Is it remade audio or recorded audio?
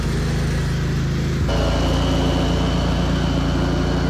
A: recorded